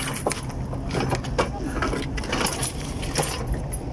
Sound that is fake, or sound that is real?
real